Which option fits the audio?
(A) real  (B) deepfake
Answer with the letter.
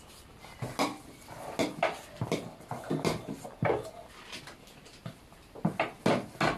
A